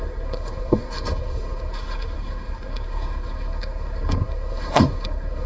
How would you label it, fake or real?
fake